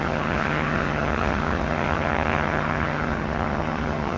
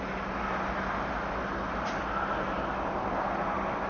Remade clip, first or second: first